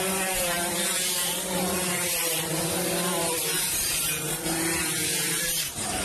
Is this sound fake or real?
fake